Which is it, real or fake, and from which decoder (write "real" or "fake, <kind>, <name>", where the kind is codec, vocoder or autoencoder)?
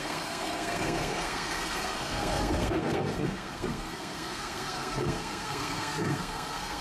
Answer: fake, codec, SNAC